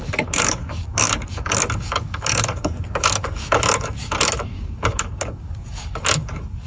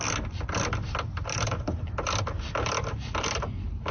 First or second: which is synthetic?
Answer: first